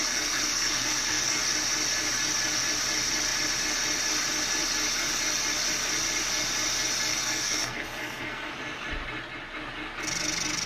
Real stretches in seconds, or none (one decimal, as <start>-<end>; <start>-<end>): 1.4-7.1; 8.5-10.7